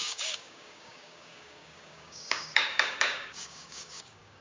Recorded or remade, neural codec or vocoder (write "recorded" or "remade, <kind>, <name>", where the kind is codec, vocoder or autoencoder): remade, codec, DAC